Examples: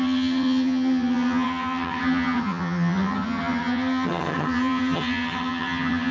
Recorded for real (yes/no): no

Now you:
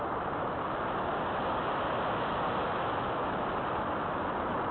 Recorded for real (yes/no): yes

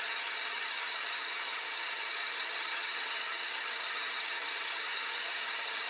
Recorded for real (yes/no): no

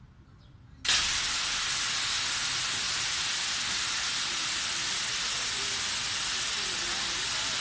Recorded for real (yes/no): yes